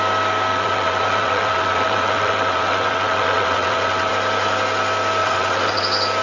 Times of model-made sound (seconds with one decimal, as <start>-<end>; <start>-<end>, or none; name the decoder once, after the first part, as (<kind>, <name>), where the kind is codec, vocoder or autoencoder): 0.5-4.1 (vocoder, WaveNeXt); 5.2-5.8